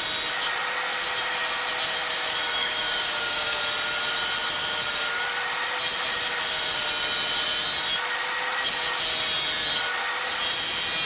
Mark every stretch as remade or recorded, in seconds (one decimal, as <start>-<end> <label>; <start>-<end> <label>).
0.0-2.6 recorded; 2.6-3.6 remade; 3.6-11.1 recorded